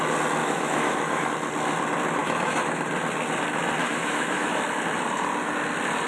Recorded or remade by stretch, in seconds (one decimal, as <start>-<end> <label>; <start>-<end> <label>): 0.0-0.4 recorded; 0.4-1.3 remade; 1.3-2.2 recorded; 2.2-2.8 remade; 2.8-3.8 recorded; 3.8-4.6 remade; 4.6-6.1 recorded